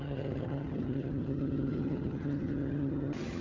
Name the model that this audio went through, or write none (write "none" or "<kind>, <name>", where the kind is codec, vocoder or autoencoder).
vocoder, HiFi-GAN